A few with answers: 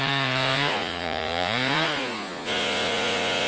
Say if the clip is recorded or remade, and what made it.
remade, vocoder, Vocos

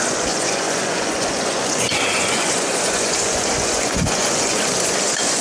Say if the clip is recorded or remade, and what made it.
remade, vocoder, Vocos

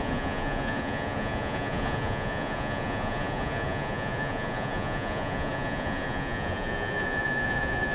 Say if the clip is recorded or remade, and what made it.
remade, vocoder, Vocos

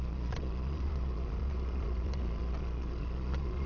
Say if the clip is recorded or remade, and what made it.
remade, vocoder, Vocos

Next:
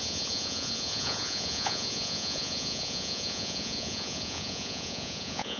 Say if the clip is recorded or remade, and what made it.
remade, vocoder, Vocos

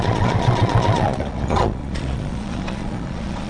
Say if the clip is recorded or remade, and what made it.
remade, vocoder, Vocos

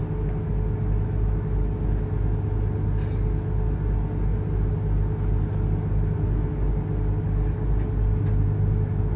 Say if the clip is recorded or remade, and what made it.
recorded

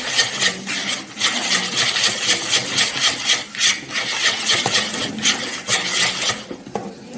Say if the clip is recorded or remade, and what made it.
recorded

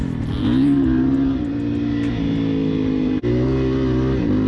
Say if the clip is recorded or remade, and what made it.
recorded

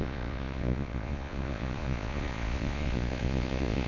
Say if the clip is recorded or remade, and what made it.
remade, vocoder, Vocos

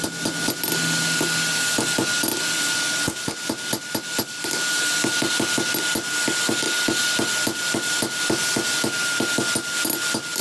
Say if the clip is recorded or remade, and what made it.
recorded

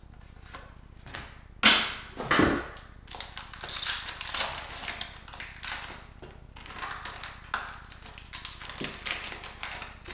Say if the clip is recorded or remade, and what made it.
recorded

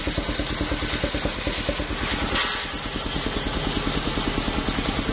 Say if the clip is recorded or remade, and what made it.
recorded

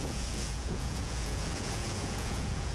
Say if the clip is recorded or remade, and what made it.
remade, vocoder, Vocos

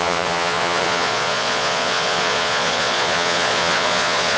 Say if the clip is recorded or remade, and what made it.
remade, vocoder, Vocos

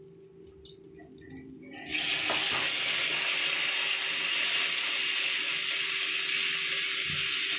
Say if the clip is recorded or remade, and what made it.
recorded